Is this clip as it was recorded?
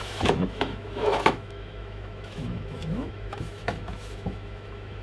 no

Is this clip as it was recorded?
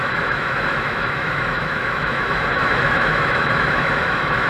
no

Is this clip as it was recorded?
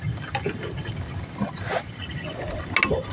yes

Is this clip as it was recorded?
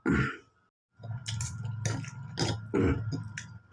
yes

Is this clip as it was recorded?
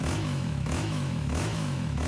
no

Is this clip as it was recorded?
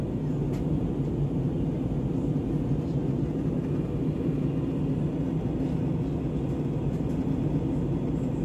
yes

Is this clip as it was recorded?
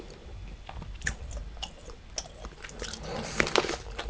yes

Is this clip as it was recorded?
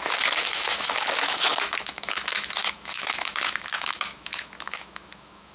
no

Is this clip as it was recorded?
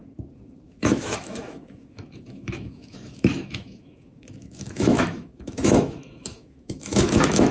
no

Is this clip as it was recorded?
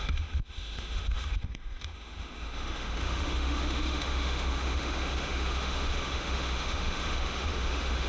no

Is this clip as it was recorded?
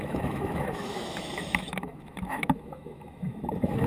no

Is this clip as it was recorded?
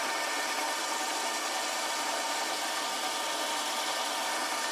yes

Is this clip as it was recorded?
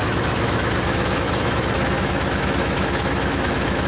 no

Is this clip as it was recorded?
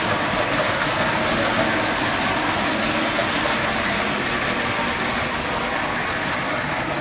yes